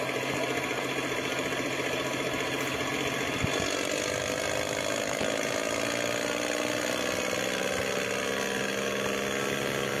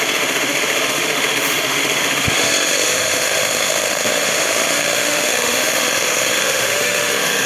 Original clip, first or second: first